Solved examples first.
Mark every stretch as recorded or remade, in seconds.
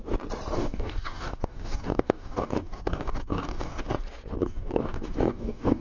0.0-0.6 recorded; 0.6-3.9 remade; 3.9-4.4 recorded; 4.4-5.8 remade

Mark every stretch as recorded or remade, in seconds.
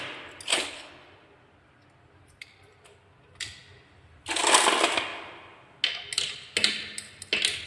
0.0-0.5 recorded; 0.5-1.0 remade; 1.0-7.7 recorded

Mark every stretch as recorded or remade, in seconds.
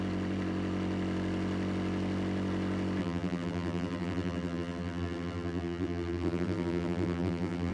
0.0-3.0 recorded; 3.0-7.7 remade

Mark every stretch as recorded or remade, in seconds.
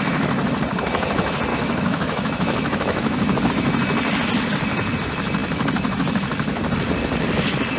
0.0-1.5 recorded; 1.5-3.5 remade; 3.5-7.8 recorded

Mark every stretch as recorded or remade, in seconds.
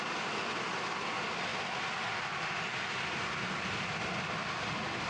0.0-1.5 remade; 1.5-4.6 recorded; 4.6-5.1 remade